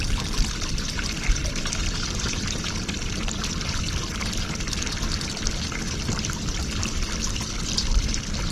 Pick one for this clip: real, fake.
real